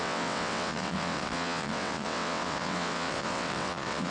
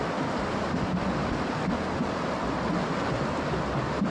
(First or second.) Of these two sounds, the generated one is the first